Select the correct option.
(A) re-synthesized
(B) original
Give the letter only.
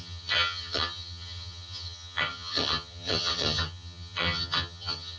A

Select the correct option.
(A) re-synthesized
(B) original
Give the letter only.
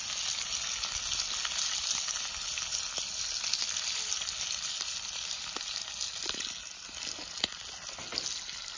B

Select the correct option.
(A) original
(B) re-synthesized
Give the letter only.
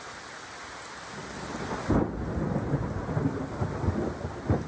A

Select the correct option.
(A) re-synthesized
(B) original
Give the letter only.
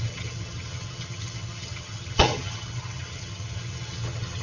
A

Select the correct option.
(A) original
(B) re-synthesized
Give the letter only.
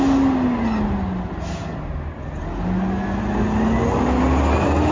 A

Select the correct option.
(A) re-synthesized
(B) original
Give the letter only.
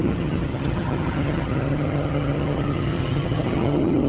A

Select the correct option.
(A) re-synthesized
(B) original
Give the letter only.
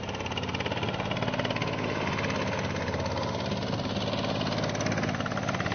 B